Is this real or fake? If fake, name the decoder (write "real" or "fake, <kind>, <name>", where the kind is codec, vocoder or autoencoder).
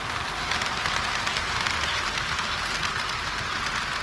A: real